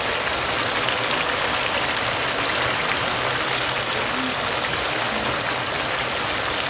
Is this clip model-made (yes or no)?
no